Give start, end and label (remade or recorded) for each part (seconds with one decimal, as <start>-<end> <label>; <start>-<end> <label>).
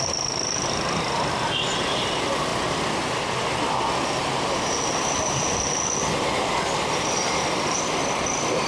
0.0-8.7 recorded